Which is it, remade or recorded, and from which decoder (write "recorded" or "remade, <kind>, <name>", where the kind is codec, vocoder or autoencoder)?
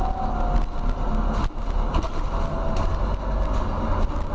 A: recorded